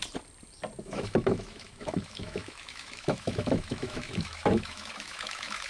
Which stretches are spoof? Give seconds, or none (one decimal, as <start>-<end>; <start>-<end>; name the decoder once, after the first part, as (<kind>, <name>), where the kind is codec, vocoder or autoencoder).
0.8-5.7 (autoencoder, DAC-VAE)